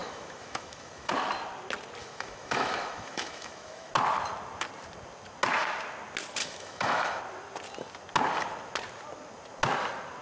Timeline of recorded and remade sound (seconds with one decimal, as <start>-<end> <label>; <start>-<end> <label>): 0.0-1.1 remade; 1.1-2.0 recorded; 2.0-3.9 remade; 3.9-6.4 recorded; 6.4-7.2 remade; 7.2-10.2 recorded